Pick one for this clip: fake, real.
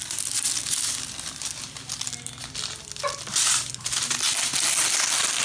real